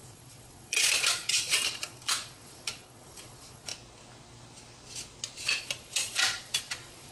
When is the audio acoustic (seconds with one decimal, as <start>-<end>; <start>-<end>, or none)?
3.7-5.6